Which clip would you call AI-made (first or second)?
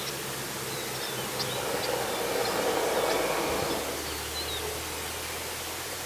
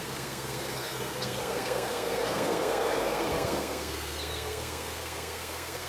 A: second